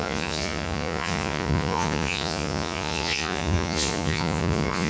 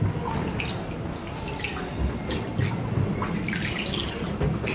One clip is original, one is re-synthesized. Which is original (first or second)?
second